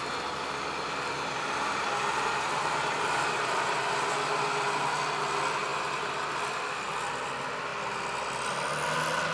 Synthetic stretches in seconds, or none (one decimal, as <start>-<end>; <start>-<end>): none